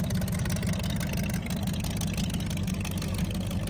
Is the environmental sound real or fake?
real